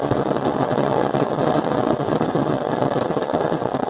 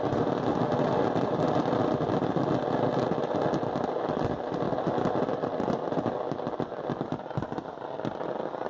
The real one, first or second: second